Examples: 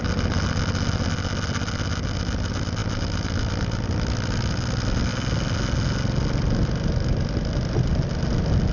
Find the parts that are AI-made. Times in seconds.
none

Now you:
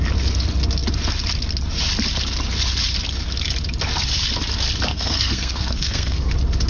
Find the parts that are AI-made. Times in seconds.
4.9-6.3 (codec, SNAC)

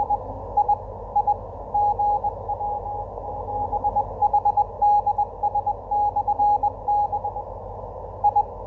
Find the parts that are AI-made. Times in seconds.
none

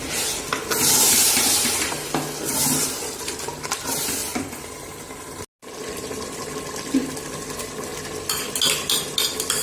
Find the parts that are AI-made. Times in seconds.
none

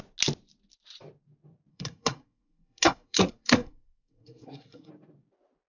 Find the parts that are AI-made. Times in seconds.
1.7-4.9 (codec, SNAC)

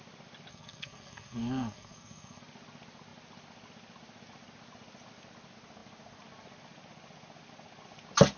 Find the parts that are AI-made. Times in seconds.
0.5-2.4 (codec, SNAC)